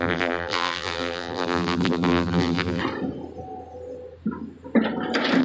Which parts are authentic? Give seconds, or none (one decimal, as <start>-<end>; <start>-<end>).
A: 2.8-5.4